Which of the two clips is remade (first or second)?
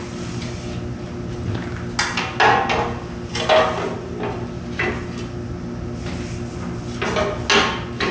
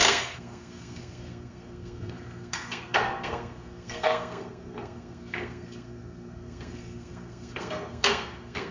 second